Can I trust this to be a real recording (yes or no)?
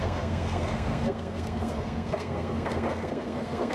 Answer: no